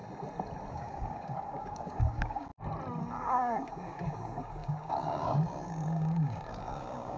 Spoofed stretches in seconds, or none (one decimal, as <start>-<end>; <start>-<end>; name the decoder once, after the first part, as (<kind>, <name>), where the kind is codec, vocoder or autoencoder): 0.7-2.5 (codec, DAC); 3.2-7.2